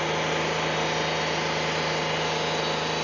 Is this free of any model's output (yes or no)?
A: yes